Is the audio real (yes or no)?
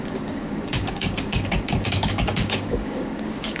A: no